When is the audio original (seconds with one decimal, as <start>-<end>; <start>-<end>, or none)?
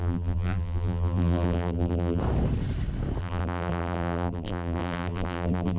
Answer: 2.2-3.2